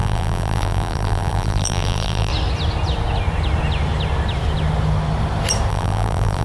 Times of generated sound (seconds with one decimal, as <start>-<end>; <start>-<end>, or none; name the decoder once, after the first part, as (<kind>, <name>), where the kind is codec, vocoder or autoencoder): 0.0-2.3 (vocoder, BigVGAN v2); 5.7-6.4